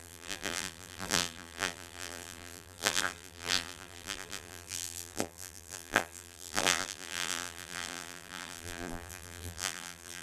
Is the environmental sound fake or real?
fake